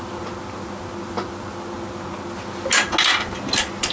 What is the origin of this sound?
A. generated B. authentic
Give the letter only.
B